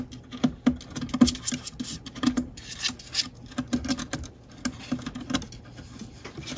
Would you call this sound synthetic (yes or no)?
no